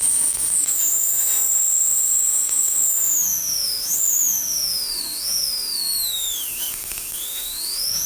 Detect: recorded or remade remade